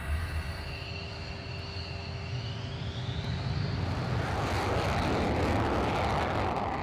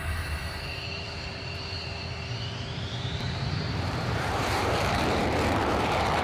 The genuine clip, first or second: first